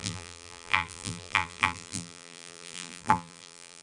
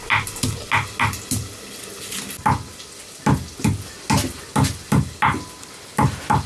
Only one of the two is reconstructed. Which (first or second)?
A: first